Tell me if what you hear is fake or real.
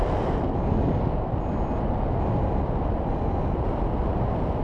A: real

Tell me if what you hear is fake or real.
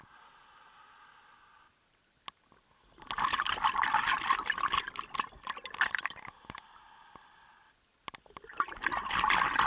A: real